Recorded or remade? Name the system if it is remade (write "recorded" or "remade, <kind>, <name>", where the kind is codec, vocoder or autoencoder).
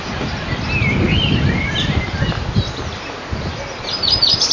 recorded